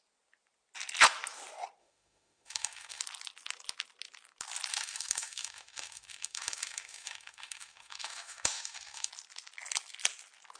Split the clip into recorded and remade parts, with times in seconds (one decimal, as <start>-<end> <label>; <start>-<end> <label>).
0.0-1.8 recorded; 1.8-3.0 remade; 3.0-4.7 recorded; 4.7-9.1 remade; 9.1-10.6 recorded